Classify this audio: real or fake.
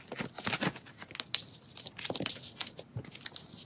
real